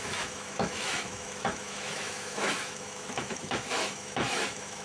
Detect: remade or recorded remade